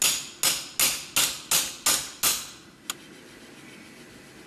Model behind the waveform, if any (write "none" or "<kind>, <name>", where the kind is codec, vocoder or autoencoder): none